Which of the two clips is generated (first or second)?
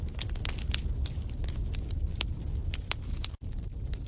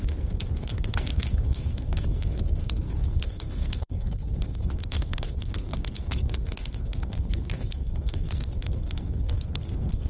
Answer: second